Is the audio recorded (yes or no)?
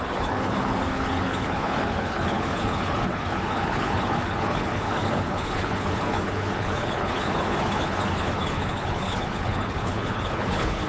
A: no